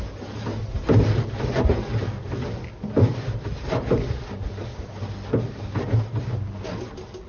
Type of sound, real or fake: real